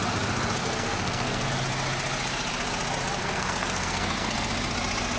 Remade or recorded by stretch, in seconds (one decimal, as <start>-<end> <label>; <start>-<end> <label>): 0.0-0.6 recorded; 0.6-1.5 remade; 1.5-3.2 recorded; 3.2-4.5 remade; 4.5-5.2 recorded